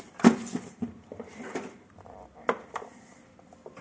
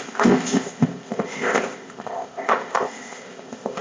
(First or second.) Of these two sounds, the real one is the first